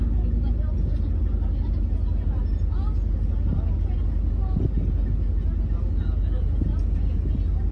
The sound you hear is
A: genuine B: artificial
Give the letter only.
A